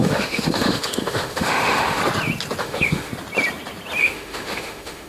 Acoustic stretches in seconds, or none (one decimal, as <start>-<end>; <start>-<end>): 2.0-2.6; 3.1-4.0